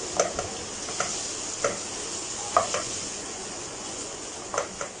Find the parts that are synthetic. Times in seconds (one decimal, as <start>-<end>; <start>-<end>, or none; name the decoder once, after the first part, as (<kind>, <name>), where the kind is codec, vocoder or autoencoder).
2.2-4.3 (vocoder, Vocos)